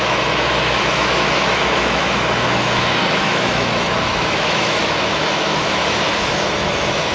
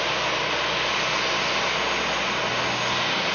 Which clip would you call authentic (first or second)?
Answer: second